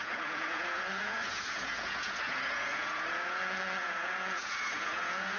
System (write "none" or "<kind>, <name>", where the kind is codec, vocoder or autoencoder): vocoder, Vocos